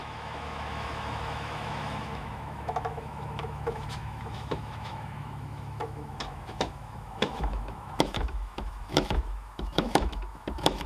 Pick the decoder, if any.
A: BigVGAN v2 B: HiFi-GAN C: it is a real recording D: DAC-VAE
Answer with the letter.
D